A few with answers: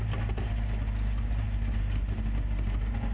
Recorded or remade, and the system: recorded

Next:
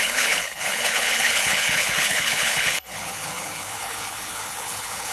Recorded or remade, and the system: remade, codec, HILCodec